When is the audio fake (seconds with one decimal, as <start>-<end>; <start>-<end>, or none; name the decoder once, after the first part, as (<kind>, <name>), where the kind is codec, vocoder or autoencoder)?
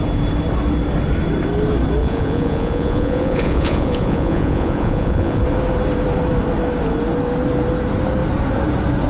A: 2.0-5.4 (vocoder, Vocos)